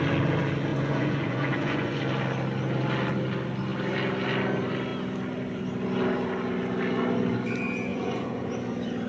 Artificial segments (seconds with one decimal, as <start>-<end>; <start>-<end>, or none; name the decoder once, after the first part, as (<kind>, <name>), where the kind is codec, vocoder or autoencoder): 0.7-2.0 (vocoder, Vocos); 7.9-8.5